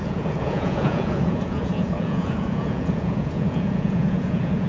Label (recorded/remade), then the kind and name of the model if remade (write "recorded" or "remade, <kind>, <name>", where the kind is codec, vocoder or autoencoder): remade, vocoder, Vocos